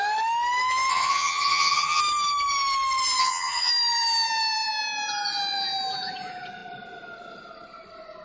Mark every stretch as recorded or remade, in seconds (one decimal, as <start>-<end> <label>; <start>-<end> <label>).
0.0-0.9 recorded; 0.9-2.0 remade; 2.0-3.2 recorded; 3.2-3.7 remade; 3.7-8.2 recorded